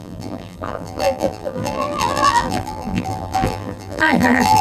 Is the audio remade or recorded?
remade